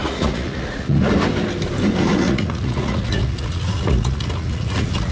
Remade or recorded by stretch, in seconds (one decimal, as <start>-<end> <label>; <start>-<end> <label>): 0.0-1.1 remade; 1.1-2.1 recorded; 2.1-5.1 remade